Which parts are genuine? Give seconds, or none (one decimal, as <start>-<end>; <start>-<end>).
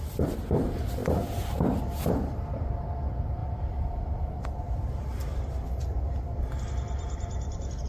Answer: 0.0-1.0; 1.8-7.9